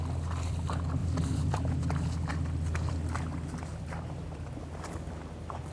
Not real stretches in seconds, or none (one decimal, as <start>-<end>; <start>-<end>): 1.0-1.7; 3.7-4.6